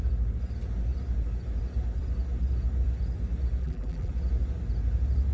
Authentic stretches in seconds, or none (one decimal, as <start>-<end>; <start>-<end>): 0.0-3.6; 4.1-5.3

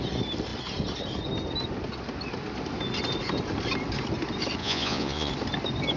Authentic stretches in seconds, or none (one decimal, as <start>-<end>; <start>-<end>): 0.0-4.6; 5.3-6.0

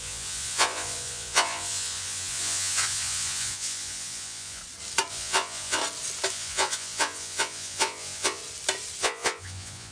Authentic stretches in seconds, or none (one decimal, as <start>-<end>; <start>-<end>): 4.6-5.1; 5.8-6.3; 8.4-9.0